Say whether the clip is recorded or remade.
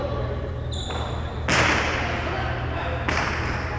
recorded